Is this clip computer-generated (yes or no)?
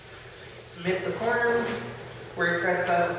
no